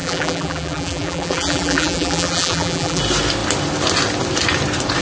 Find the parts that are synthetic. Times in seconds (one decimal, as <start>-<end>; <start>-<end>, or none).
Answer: 0.0-3.0